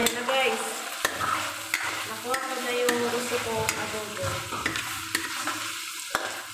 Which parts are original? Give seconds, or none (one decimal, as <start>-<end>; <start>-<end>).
0.0-6.5